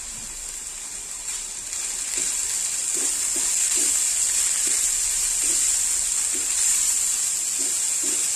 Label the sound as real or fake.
real